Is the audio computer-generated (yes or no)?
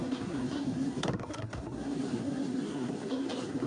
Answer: yes